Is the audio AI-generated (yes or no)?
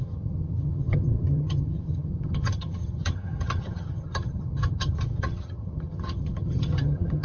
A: yes